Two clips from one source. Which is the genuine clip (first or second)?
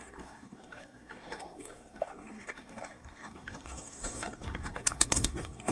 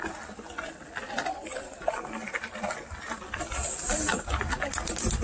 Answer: second